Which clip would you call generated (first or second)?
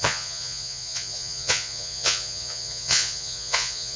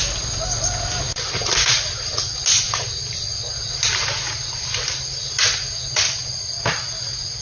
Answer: first